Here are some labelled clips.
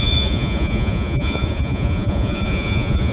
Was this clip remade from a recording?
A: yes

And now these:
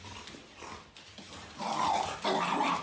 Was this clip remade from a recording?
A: no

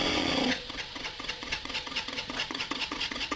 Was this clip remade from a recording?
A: yes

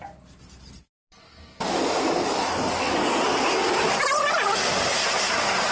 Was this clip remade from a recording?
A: no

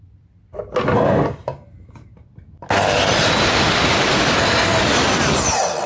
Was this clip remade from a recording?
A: no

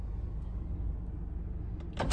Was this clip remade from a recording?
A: no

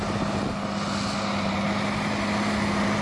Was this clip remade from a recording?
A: no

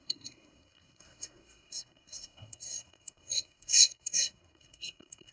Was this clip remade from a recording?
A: yes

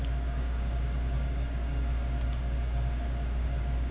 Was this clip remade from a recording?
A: yes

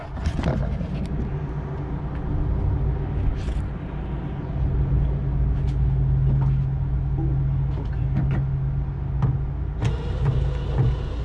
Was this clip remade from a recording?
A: no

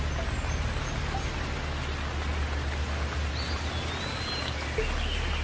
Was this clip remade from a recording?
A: no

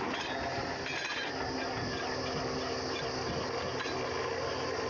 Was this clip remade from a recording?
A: no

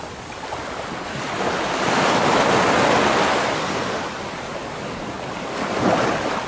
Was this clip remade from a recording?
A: no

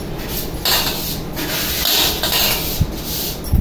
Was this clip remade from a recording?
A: no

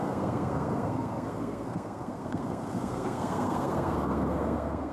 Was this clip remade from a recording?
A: yes